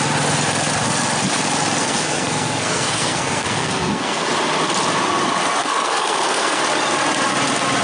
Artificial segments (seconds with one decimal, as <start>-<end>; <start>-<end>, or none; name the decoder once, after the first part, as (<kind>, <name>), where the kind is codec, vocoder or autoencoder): 1.8-4.3 (codec, SNAC); 5.6-6.6